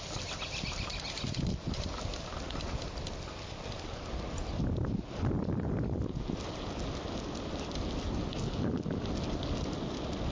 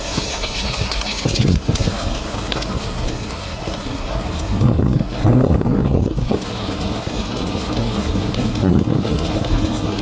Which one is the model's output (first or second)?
second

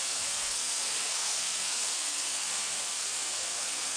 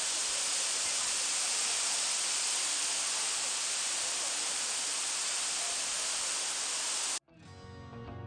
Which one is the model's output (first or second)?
first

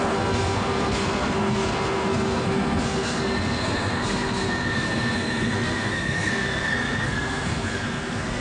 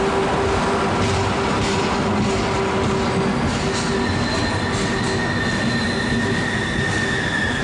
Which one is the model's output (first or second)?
first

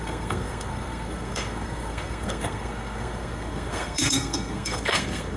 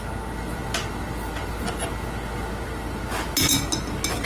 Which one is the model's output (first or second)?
first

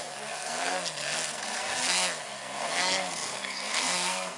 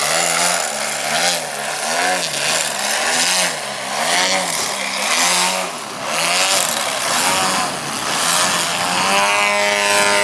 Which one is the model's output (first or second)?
first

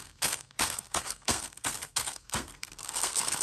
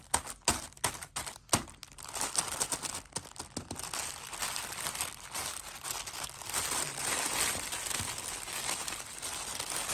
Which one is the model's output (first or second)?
first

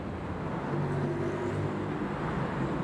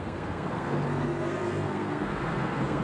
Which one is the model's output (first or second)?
second